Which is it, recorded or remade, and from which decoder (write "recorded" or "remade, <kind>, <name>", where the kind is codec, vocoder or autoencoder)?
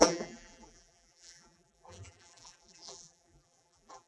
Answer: remade, vocoder, BigVGAN v2